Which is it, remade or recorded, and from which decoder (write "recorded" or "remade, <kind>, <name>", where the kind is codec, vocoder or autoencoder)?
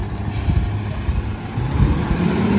recorded